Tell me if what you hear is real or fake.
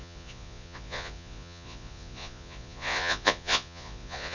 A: fake